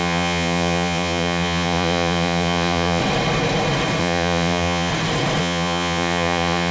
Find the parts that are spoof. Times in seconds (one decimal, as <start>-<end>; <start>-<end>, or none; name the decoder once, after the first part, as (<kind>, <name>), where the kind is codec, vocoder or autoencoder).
0.0-3.0 (vocoder, Vocos); 4.0-4.9; 5.4-6.7